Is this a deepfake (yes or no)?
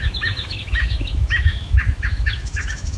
yes